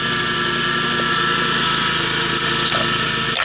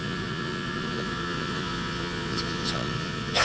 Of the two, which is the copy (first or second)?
second